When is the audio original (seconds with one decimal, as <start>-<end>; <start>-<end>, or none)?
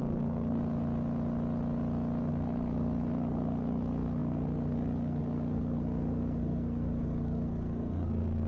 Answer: 0.6-2.3